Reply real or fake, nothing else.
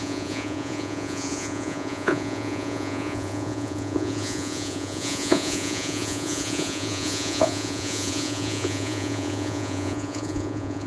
fake